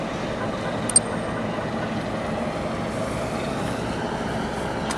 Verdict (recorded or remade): recorded